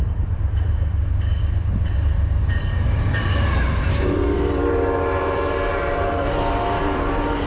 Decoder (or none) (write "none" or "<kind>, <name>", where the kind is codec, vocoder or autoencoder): vocoder, BigVGAN v2